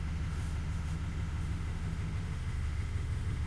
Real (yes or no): no